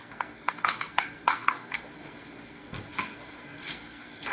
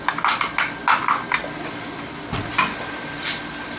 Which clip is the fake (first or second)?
first